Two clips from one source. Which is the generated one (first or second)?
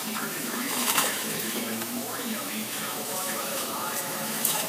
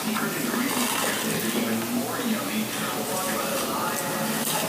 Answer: first